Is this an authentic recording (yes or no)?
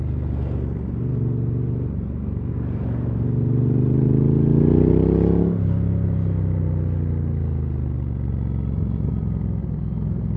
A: yes